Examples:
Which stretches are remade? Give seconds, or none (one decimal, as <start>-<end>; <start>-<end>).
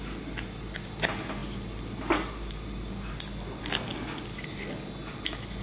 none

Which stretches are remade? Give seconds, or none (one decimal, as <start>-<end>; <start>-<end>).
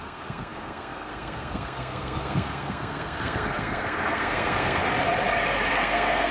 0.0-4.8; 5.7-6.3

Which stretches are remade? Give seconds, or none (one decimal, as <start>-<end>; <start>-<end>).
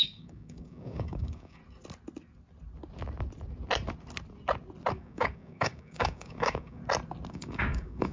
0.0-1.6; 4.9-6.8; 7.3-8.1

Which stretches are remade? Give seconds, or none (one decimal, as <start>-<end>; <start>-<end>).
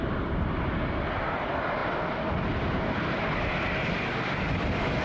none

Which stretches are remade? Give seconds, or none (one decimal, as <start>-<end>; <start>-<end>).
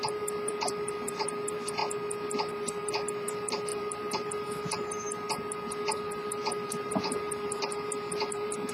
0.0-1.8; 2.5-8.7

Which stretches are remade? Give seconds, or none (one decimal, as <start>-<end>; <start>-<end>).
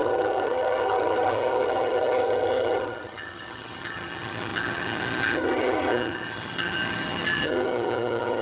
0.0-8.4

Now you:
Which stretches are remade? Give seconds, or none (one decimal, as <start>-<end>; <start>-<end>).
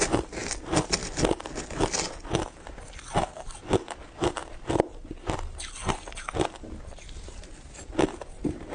none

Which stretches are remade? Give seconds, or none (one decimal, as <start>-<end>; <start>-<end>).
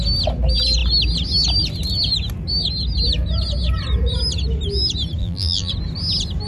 5.2-5.7